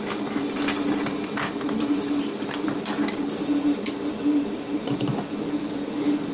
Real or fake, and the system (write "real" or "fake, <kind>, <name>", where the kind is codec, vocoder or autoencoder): real